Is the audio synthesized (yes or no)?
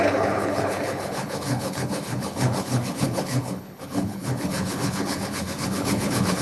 yes